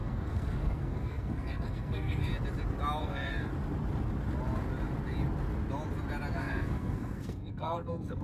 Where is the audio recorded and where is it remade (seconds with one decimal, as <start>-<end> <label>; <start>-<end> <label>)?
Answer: 0.0-2.3 remade; 2.3-3.0 recorded; 3.0-3.5 remade; 3.5-6.3 recorded; 6.3-8.2 remade